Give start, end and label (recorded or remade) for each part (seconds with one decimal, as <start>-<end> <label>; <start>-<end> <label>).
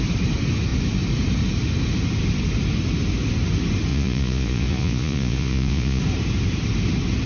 0.0-3.9 recorded; 3.9-6.0 remade; 6.0-7.3 recorded